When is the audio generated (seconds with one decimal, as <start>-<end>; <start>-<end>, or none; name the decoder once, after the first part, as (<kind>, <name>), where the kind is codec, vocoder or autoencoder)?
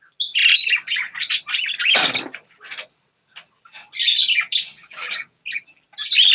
4.7-5.4 (codec, DAC)